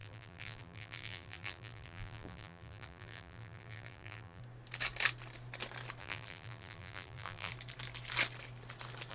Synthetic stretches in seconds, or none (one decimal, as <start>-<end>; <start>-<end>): 0.0-4.4; 6.0-7.5